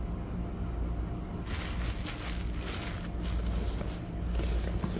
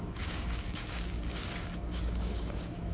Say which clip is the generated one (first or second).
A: second